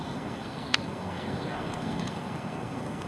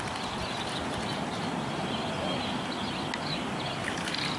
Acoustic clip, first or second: second